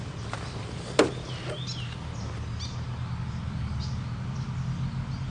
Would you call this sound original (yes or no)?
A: yes